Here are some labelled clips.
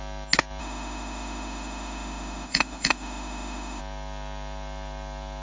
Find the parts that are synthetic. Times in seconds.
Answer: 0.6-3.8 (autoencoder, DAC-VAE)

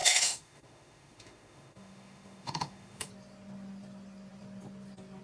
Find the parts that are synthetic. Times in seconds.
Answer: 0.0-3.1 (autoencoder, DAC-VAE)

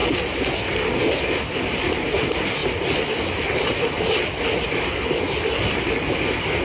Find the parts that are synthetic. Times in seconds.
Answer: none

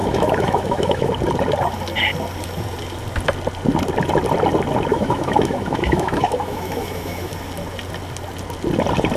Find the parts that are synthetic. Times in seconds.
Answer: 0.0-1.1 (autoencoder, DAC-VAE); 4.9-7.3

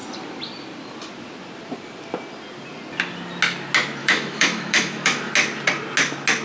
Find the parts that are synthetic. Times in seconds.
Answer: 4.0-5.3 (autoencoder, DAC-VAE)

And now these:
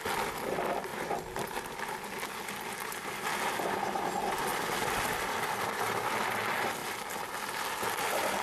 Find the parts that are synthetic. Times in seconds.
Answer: none

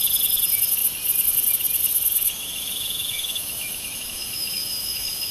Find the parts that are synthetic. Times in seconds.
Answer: 1.9-5.3 (autoencoder, DAC-VAE)

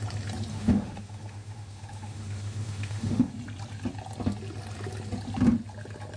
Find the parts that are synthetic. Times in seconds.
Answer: 0.5-3.3 (autoencoder, DAC-VAE)